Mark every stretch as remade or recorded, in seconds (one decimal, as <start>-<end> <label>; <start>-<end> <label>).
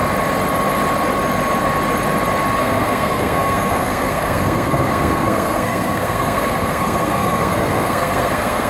0.0-2.6 recorded; 2.6-8.7 remade